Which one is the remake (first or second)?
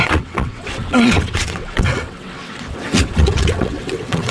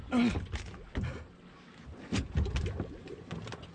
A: first